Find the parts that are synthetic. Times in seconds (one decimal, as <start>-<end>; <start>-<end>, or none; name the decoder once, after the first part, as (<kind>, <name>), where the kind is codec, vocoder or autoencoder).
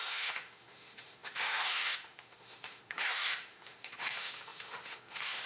0.0-5.5 (autoencoder, DAC-VAE)